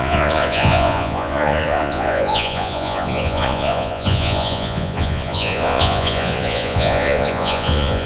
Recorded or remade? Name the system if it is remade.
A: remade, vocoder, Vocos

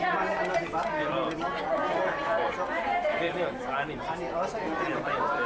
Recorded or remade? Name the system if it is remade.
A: recorded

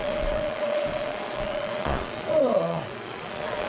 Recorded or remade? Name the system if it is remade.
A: remade, vocoder, Vocos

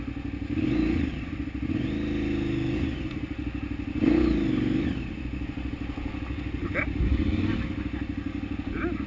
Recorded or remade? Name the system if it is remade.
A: recorded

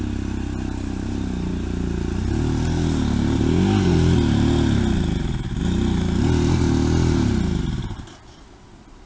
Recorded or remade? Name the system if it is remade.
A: recorded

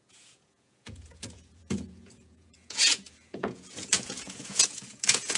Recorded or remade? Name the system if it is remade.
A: remade, vocoder, Vocos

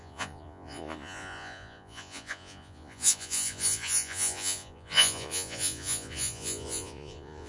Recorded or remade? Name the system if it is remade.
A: remade, vocoder, Vocos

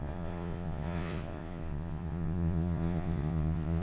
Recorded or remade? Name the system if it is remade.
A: remade, vocoder, Vocos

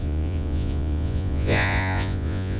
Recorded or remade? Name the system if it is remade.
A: remade, vocoder, Vocos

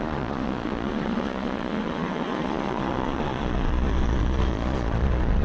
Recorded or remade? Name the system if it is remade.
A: remade, vocoder, Vocos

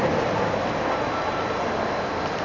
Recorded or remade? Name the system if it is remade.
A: recorded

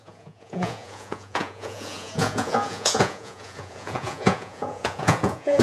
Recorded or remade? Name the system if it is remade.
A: remade, vocoder, Vocos